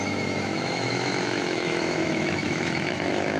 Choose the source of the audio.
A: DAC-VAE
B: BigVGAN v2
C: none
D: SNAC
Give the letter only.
A